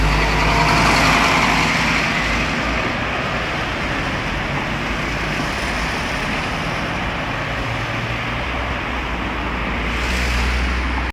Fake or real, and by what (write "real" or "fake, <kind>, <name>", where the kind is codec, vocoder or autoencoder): real